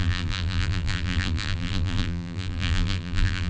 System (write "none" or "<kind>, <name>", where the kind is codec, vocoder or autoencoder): vocoder, BigVGAN v2